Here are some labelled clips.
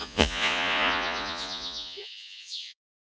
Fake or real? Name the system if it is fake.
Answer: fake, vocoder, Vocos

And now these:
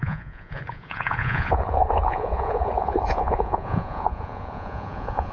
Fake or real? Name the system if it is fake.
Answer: fake, vocoder, Vocos